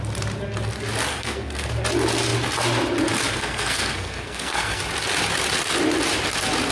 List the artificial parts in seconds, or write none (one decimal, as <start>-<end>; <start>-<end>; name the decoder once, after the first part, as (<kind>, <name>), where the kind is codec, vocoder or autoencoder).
1.1-1.7 (codec, SNAC); 3.3-4.8